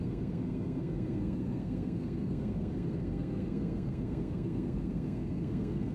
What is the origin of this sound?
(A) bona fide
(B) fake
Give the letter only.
B